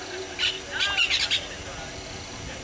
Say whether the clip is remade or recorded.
recorded